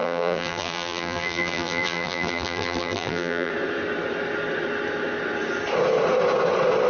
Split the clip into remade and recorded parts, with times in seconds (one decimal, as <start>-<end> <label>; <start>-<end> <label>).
0.0-3.5 remade; 3.5-6.9 recorded